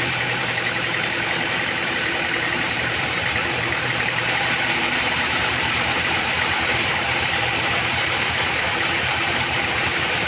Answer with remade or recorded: remade